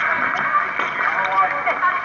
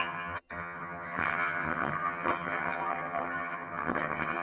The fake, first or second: second